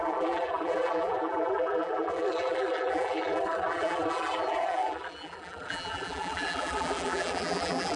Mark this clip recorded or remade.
remade